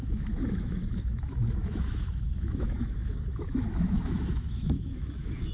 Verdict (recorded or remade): remade